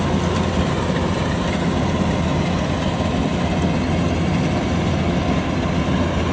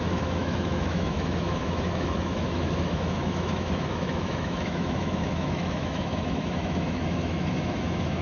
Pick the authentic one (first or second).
first